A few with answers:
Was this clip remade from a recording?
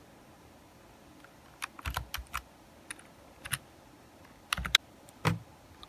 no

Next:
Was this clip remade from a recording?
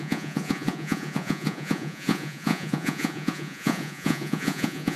yes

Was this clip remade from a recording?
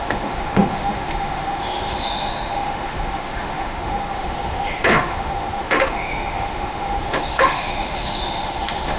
yes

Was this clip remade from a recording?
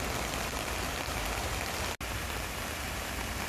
no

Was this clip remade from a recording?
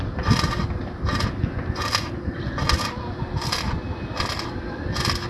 no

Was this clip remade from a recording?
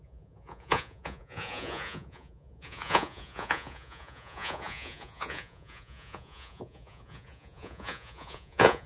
yes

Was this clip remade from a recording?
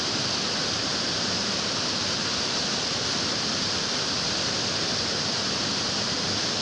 no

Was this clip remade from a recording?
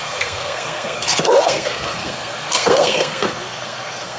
yes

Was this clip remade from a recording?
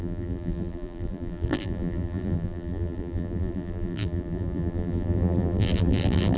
yes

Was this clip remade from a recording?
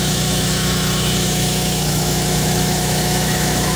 yes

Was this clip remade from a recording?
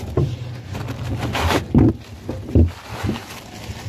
no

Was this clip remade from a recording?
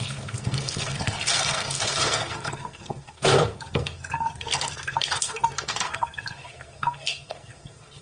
yes